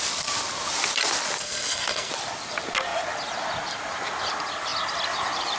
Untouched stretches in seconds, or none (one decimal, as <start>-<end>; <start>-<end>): 0.0-1.4; 2.1-5.6